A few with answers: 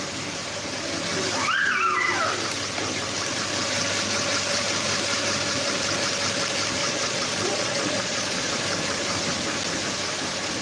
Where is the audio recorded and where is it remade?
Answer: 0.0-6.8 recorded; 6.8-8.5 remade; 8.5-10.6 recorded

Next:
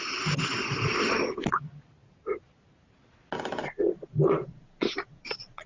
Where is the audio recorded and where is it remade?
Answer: 0.0-3.6 recorded; 3.6-5.7 remade

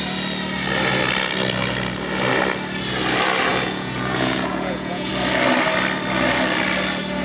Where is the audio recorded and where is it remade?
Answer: 0.0-3.5 recorded; 3.5-5.1 remade; 5.1-7.2 recorded

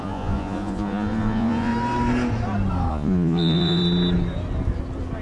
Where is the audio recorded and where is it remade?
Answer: 0.0-1.7 remade; 1.7-2.9 recorded; 2.9-3.8 remade; 3.8-5.2 recorded

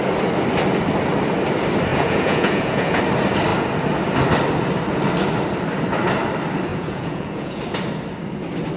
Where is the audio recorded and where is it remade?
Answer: 0.0-1.9 recorded; 1.9-3.0 remade; 3.0-6.7 recorded; 6.7-7.6 remade; 7.6-8.8 recorded